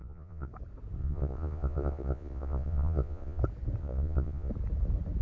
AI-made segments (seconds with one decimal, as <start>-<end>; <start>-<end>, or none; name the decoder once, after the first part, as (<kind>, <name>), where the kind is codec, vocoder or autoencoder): 0.0-0.5 (vocoder, Vocos); 1.0-3.4; 3.8-4.5